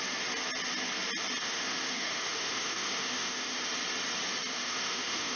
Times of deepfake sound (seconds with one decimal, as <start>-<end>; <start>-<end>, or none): 1.4-3.6; 4.5-5.4